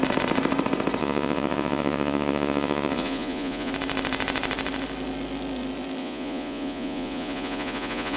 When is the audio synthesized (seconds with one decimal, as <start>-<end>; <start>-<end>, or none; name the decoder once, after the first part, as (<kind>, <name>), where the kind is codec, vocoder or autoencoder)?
1.0-3.7 (vocoder, Vocos); 6.0-8.2